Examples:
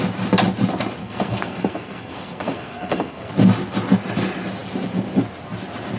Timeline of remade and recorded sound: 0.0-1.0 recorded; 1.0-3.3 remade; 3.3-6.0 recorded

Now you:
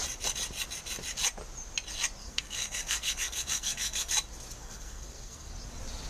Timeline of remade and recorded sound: 0.0-2.2 recorded; 2.2-4.1 remade; 4.1-4.6 recorded; 4.6-5.5 remade; 5.5-6.1 recorded

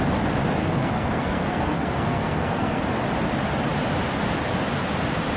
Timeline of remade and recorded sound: 0.0-0.6 recorded; 0.6-2.8 remade; 2.8-5.4 recorded

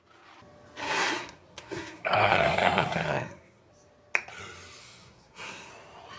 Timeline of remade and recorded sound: 0.0-0.8 recorded; 0.8-3.7 remade; 3.7-4.8 recorded; 4.8-5.7 remade; 5.7-6.2 recorded

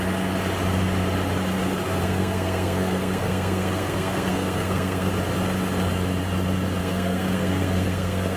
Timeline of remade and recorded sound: 0.0-2.0 recorded; 2.0-5.1 remade; 5.1-6.8 recorded; 6.8-8.4 remade

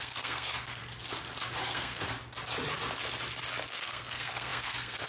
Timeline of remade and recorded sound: 0.0-0.8 remade; 0.8-1.6 recorded; 1.6-2.0 remade; 2.0-3.7 recorded; 3.7-5.1 remade

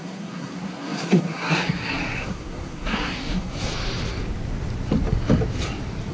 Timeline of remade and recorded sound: 0.0-3.7 remade; 3.7-6.1 recorded

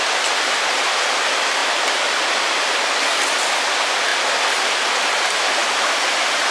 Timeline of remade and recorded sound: 0.0-6.5 recorded